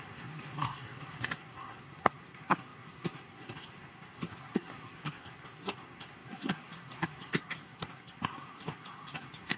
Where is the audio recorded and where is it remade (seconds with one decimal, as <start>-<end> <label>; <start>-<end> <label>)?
0.0-9.6 remade